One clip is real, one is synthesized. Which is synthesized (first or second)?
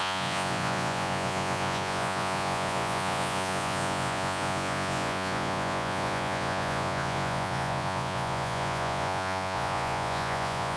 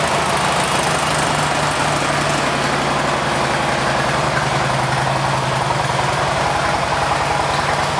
first